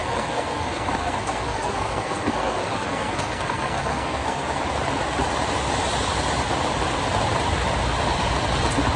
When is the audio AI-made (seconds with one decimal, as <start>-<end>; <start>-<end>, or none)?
0.0-4.6